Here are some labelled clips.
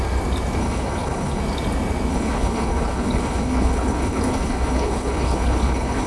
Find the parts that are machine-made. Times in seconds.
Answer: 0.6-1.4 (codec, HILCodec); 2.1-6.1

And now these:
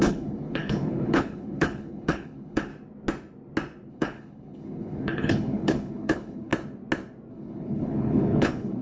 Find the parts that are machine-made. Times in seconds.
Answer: 0.0-2.7 (codec, HILCodec); 3.9-6.5; 7.3-8.8